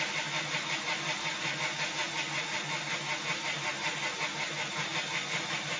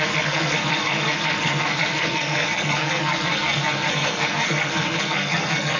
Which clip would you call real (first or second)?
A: first